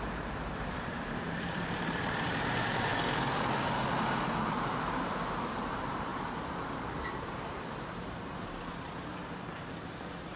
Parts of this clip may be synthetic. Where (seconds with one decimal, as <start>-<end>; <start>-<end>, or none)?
0.0-2.9; 4.5-10.4